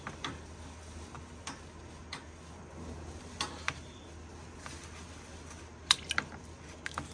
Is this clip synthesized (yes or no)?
no